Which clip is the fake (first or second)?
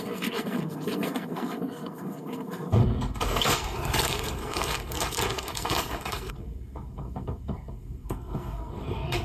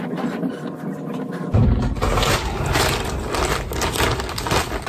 first